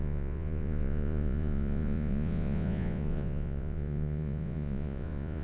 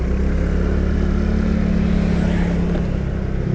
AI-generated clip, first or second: first